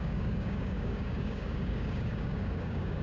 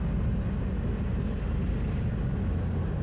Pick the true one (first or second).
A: second